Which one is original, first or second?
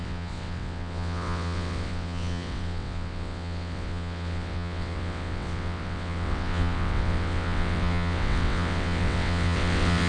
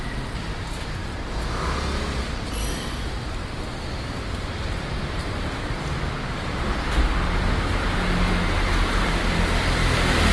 second